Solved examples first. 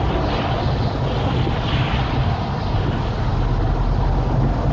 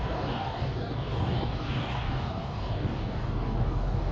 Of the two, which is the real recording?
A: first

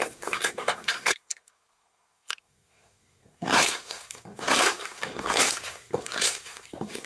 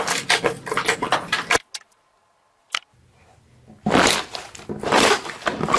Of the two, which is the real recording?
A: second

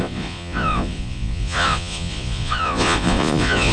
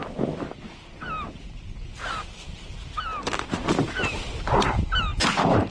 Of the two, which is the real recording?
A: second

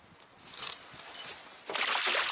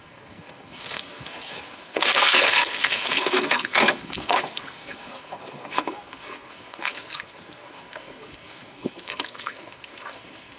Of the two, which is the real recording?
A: first